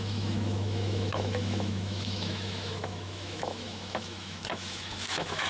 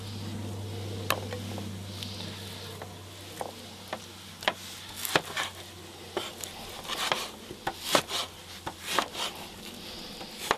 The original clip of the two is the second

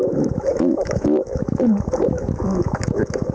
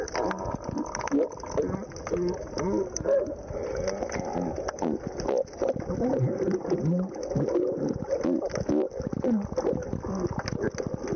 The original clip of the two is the second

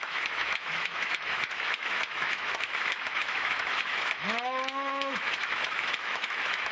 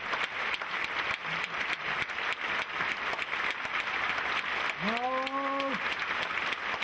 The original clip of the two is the second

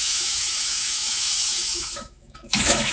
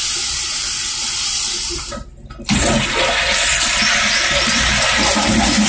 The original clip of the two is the second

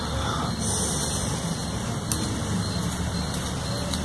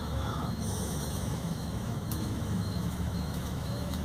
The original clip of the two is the first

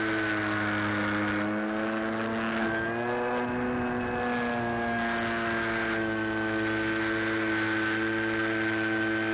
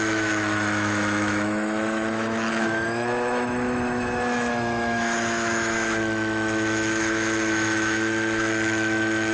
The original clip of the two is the first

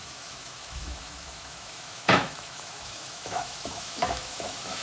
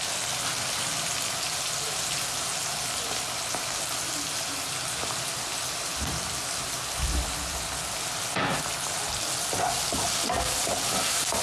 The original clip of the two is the second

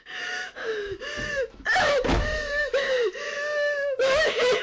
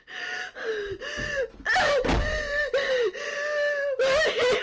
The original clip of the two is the second